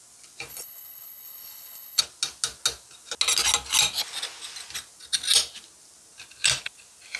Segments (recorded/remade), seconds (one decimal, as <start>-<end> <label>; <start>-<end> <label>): 0.0-0.5 recorded; 0.5-2.0 remade; 2.0-7.2 recorded